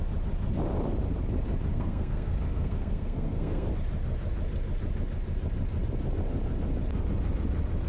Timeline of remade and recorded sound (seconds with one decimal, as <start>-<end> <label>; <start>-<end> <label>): 0.0-1.7 recorded; 1.7-3.7 remade; 3.7-7.9 recorded